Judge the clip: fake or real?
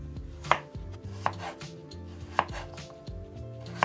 real